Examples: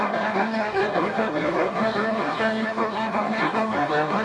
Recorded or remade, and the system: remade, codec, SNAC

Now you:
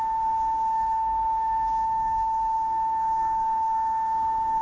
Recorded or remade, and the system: remade, codec, SNAC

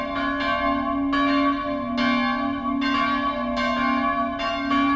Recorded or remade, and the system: recorded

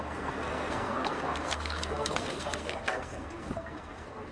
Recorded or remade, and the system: remade, codec, SNAC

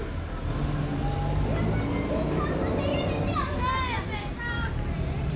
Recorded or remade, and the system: recorded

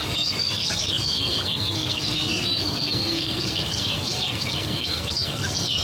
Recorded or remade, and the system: remade, codec, SNAC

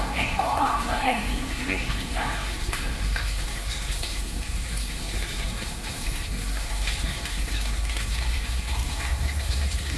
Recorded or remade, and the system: remade, codec, SNAC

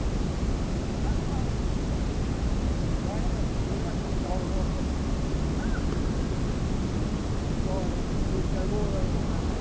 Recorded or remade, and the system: recorded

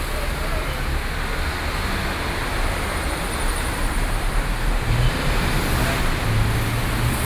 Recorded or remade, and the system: recorded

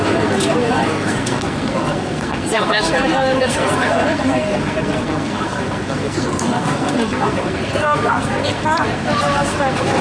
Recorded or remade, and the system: remade, codec, SNAC